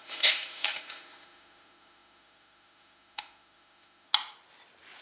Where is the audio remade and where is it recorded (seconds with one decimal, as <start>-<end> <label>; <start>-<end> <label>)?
0.0-4.1 remade; 4.1-5.0 recorded